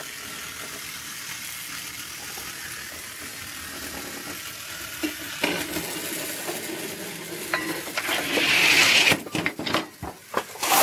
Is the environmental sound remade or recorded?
recorded